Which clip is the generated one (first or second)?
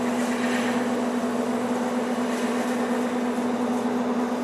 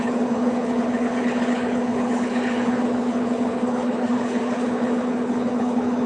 second